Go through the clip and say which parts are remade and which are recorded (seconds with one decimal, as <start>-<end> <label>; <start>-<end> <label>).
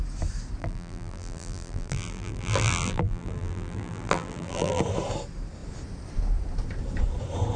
0.0-0.6 recorded; 0.6-4.8 remade; 4.8-7.6 recorded